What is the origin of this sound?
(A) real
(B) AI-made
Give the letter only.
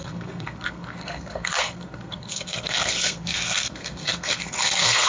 B